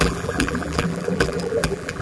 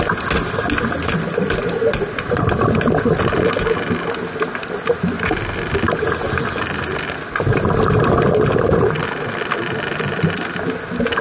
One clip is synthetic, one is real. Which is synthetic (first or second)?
first